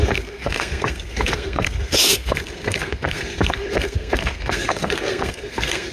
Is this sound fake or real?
fake